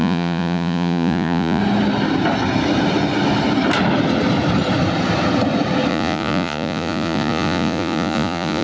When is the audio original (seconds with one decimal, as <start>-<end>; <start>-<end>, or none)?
1.6-5.9